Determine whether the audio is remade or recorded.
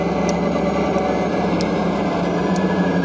recorded